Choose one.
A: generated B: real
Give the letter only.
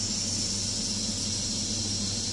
B